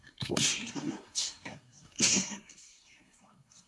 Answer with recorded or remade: remade